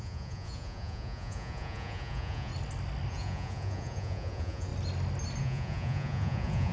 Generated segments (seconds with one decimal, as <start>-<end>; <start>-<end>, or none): 0.0-2.5; 3.1-4.7; 5.4-6.7